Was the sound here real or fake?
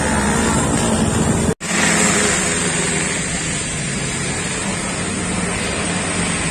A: real